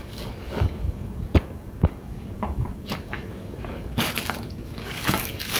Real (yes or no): no